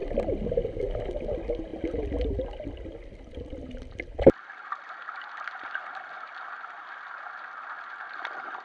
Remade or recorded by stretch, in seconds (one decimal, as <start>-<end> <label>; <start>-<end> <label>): 0.0-8.6 recorded